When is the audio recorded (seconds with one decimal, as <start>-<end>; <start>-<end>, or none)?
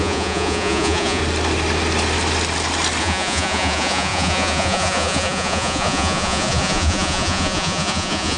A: 1.2-3.0